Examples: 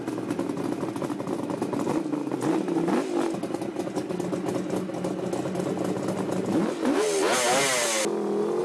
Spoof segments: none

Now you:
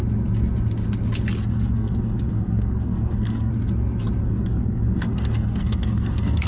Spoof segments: 1.4-3.5 (codec, SNAC); 4.2-6.5

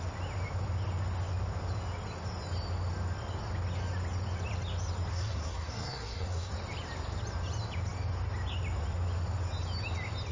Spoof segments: 5.1-6.5 (codec, SNAC)